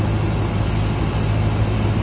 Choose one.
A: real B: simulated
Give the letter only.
A